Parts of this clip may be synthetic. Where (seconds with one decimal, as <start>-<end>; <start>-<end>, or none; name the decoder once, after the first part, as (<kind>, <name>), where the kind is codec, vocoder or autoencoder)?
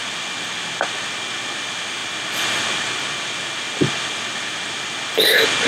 none